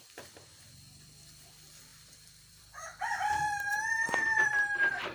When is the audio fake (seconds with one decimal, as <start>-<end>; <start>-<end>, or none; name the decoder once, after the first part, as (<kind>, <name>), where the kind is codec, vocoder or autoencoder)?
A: 0.0-5.1 (vocoder, BigVGAN v2)